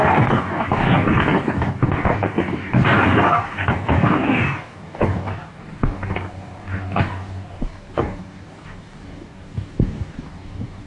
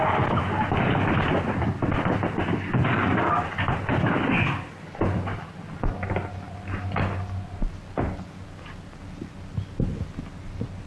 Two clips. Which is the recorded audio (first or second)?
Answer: second